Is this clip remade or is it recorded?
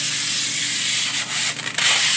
recorded